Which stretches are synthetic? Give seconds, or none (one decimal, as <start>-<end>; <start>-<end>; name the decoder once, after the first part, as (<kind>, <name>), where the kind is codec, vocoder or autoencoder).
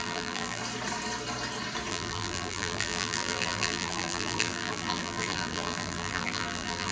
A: 0.0-0.6 (vocoder, BigVGAN v2); 1.9-6.9